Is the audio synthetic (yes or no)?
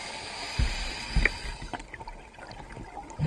no